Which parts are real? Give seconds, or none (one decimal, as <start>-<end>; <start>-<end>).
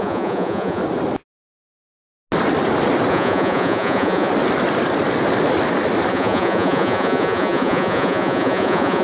0.8-3.1; 4.3-6.1